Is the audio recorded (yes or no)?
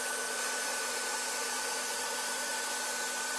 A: no